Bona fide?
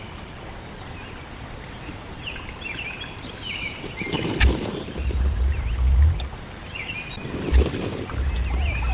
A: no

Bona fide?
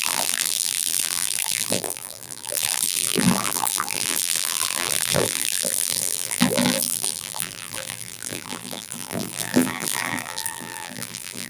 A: no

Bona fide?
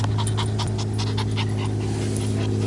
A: yes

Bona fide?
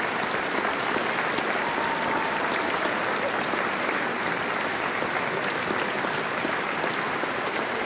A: no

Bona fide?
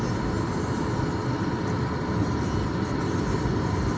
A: yes